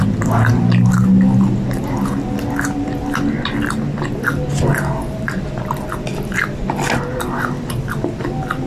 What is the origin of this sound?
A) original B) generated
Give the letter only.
A